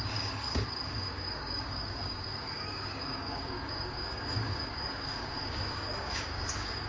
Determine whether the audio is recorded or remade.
remade